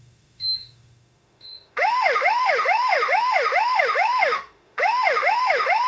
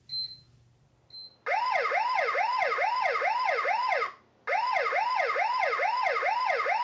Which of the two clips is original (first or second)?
second